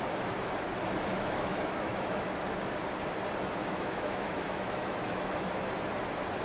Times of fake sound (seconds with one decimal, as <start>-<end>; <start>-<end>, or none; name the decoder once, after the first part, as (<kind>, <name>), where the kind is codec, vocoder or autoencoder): 1.1-2.4 (autoencoder, DAC-VAE); 3.6-5.7